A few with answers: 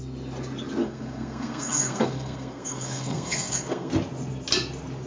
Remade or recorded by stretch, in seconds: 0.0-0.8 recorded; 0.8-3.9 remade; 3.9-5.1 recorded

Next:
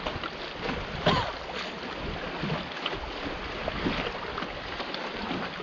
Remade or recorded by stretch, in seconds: 0.0-3.6 recorded; 3.6-4.2 remade; 4.2-5.6 recorded

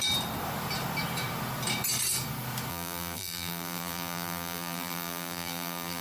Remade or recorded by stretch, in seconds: 0.0-2.7 recorded; 2.7-6.0 remade

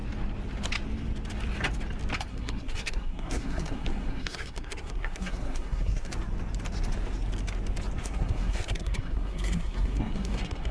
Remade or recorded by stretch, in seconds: 0.0-2.3 recorded; 2.3-6.1 remade; 6.1-8.0 recorded; 8.0-10.7 remade

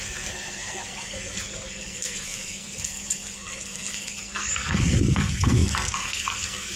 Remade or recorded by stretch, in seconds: 0.0-6.8 remade

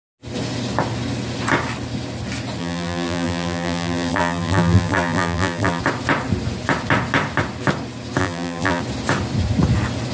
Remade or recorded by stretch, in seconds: 0.0-2.6 recorded; 2.6-5.8 remade; 5.8-8.2 recorded; 8.2-8.8 remade; 8.8-10.1 recorded

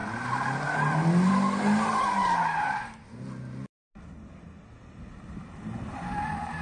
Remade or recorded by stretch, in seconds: 0.0-6.6 recorded